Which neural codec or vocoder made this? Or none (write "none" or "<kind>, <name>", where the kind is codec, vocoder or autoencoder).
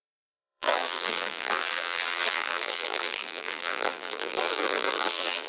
vocoder, BigVGAN v2